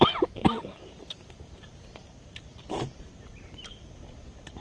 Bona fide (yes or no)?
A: no